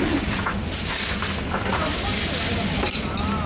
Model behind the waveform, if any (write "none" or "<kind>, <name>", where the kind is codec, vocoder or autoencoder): none